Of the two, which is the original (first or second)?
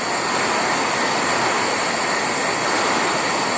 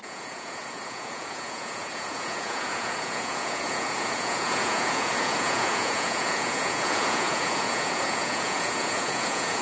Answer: first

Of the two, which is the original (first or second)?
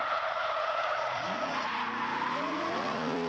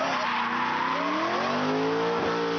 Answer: second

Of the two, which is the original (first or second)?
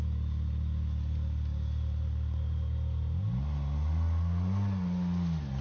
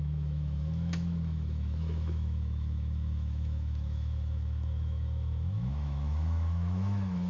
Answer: first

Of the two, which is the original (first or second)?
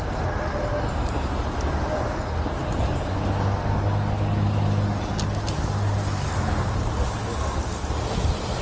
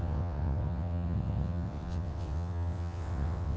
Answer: first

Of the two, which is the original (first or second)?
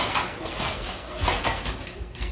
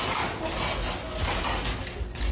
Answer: second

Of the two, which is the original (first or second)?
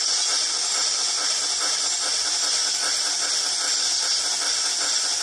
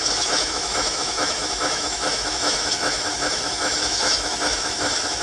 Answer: first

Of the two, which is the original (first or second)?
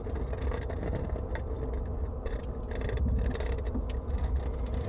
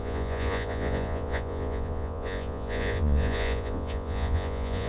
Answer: first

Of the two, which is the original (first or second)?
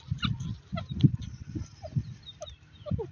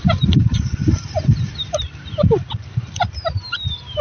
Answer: first